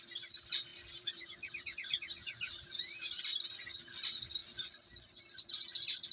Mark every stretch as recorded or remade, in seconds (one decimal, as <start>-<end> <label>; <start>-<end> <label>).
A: 0.0-0.7 recorded; 0.7-3.2 remade; 3.2-4.4 recorded; 4.4-5.5 remade; 5.5-6.1 recorded